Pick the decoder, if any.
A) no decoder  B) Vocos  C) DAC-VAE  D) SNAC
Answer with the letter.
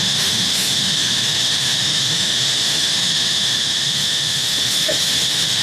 C